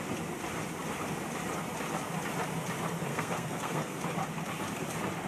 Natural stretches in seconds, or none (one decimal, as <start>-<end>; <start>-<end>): 0.0-3.1; 4.0-5.3